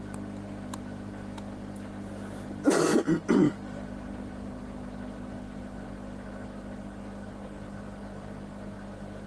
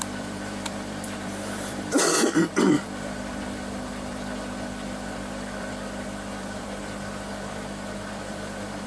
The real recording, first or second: first